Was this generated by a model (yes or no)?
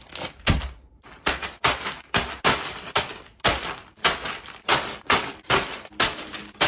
no